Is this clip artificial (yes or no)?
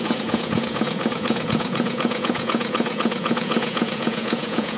yes